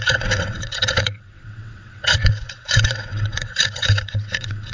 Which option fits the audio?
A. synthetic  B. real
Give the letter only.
A